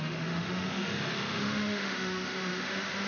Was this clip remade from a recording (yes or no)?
yes